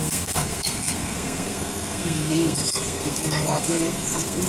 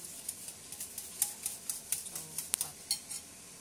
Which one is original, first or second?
second